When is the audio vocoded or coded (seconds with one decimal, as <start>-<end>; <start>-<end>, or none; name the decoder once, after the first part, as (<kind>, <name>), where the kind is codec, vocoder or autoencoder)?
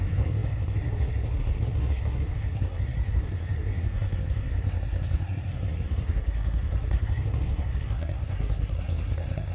0.0-9.5 (codec, SNAC)